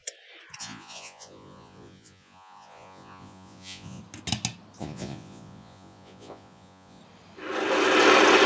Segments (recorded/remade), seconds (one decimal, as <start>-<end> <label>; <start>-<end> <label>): 0.0-0.6 recorded; 0.6-4.0 remade; 4.0-4.8 recorded; 4.8-7.0 remade; 7.0-8.5 recorded